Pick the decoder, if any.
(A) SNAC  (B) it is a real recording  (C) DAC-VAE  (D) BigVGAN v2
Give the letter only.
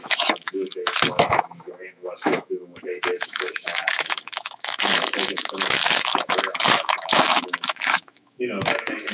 C